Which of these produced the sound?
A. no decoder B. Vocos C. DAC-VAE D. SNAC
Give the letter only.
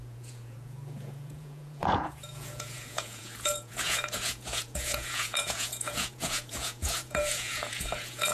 B